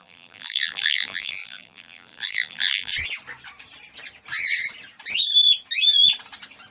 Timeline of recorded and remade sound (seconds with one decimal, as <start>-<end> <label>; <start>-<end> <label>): 0.0-2.9 remade; 2.9-6.7 recorded